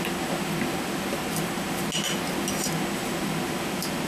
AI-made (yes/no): no